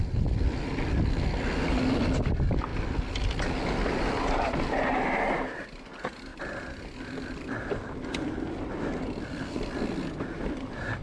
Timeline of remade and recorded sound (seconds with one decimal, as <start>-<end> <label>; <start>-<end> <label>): 0.0-11.0 recorded